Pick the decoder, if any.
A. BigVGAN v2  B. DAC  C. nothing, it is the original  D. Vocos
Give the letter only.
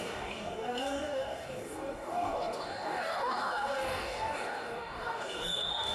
B